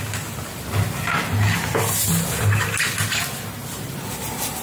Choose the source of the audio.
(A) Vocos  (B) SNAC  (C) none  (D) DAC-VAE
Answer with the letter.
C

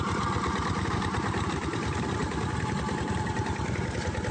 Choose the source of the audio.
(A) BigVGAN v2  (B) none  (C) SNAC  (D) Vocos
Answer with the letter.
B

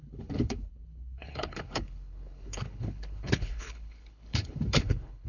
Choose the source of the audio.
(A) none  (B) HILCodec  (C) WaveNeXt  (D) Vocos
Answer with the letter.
B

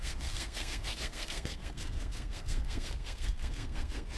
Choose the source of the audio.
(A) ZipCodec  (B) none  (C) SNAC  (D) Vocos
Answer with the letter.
C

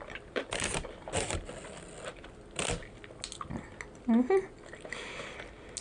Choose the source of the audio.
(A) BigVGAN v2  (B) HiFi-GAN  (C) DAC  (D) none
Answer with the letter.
D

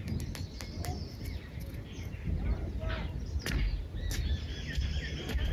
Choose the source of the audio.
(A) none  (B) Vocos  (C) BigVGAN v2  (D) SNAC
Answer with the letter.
A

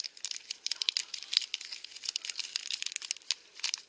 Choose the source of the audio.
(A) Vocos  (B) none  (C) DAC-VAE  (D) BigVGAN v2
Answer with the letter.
B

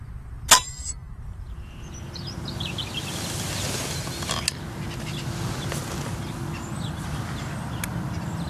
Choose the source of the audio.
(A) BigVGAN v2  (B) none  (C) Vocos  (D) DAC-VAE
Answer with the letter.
B